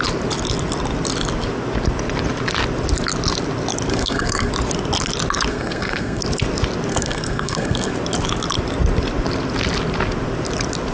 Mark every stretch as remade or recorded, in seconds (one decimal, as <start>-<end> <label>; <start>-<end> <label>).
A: 0.0-3.9 recorded; 3.9-4.5 remade; 4.5-5.5 recorded; 5.5-6.2 remade; 6.2-6.9 recorded; 6.9-7.9 remade; 7.9-10.9 recorded